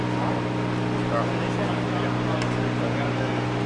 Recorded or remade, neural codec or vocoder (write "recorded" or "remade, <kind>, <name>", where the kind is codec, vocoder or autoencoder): recorded